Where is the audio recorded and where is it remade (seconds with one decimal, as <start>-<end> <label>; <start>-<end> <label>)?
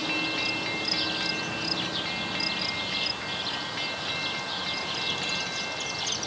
0.0-6.3 recorded